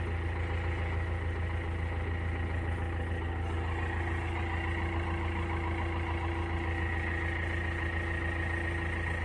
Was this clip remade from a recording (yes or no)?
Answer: no